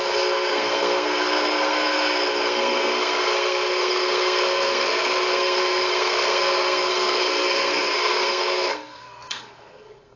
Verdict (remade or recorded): remade